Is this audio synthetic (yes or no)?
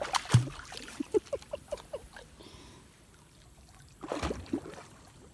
no